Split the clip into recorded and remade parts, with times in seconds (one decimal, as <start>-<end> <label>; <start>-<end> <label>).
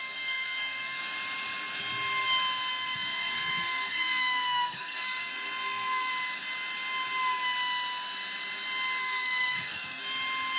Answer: 0.0-1.0 remade; 1.0-2.7 recorded; 2.7-6.1 remade; 6.1-9.0 recorded; 9.0-10.0 remade; 10.0-10.6 recorded